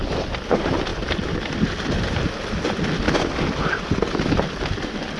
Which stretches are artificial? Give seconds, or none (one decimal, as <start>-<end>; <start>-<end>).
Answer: 0.0-0.9; 4.0-5.2